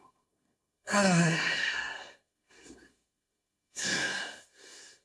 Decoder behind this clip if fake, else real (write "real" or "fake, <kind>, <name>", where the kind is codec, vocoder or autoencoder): fake, codec, SNAC